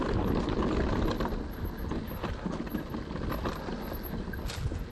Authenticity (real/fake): real